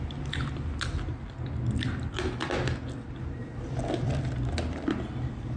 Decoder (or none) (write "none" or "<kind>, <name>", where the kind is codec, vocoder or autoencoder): none